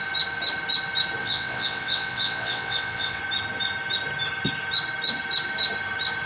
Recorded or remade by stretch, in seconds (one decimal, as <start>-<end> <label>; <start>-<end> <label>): 0.0-1.2 recorded; 1.2-3.2 remade; 3.2-6.3 recorded